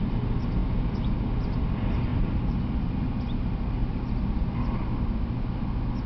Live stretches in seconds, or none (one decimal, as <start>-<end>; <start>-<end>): 0.0-6.1